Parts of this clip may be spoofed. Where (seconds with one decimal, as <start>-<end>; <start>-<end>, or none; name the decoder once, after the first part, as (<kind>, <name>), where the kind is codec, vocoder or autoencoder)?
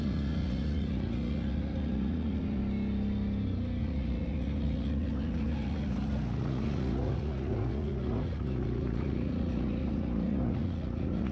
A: 0.0-2.6 (vocoder, Vocos); 3.8-11.3